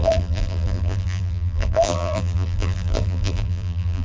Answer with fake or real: fake